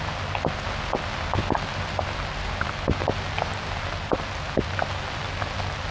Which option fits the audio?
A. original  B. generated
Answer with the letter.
A